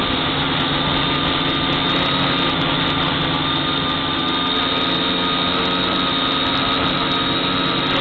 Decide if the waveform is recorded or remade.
recorded